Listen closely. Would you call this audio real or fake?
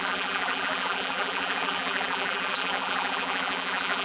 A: fake